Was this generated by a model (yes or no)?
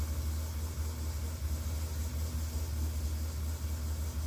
no